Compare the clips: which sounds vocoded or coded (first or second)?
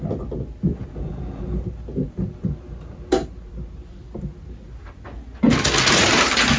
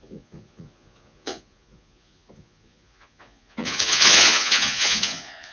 second